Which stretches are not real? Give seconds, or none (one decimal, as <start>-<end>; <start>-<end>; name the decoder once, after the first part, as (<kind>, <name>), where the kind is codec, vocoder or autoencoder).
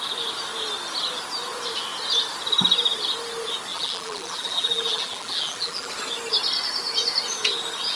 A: 3.7-5.9 (vocoder, BigVGAN v2)